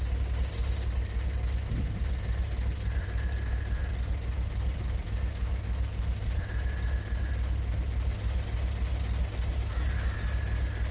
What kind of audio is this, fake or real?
real